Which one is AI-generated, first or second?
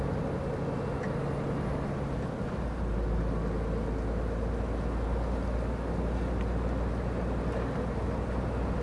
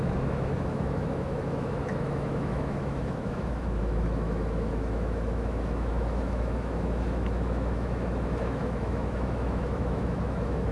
second